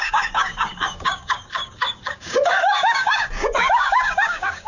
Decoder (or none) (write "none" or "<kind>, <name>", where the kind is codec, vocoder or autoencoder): codec, DAC